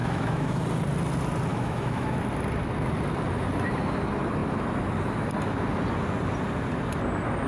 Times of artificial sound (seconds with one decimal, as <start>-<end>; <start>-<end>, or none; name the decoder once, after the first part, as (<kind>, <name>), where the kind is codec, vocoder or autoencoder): 0.0-0.6 (autoencoder, DAC-VAE); 1.5-2.2